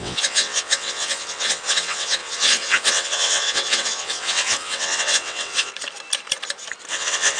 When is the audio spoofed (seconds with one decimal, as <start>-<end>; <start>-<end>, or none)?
0.0-5.7; 6.9-7.4